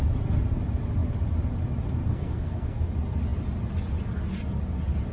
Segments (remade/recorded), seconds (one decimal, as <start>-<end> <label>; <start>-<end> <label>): 0.0-2.1 recorded; 2.1-2.8 remade; 2.8-5.1 recorded